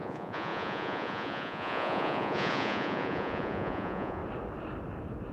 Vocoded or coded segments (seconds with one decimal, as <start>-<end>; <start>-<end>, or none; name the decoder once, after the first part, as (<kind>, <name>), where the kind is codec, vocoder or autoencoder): 0.0-4.2 (vocoder, Vocos)